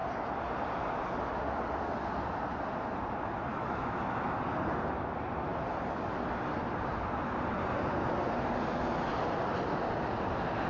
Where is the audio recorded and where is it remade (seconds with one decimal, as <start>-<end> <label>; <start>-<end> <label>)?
0.0-3.5 recorded; 3.5-4.4 remade; 4.4-10.7 recorded